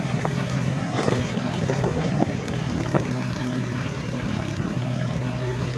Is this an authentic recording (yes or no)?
no